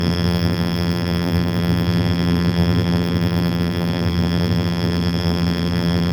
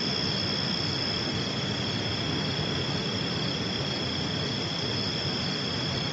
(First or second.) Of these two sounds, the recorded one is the second